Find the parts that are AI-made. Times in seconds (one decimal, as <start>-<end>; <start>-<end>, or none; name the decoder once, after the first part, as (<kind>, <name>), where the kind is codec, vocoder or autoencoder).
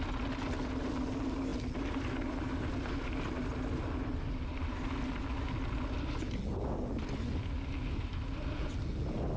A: none